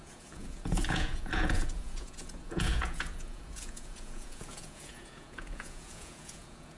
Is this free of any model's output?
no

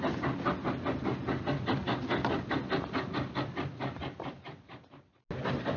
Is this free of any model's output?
yes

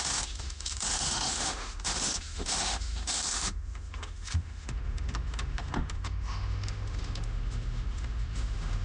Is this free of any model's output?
no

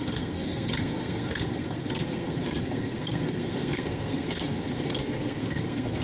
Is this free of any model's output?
no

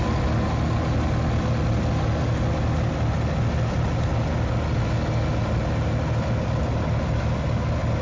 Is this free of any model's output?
yes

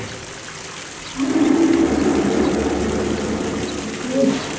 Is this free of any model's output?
yes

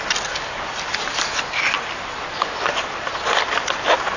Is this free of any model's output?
yes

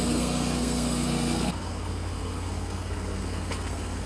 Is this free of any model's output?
no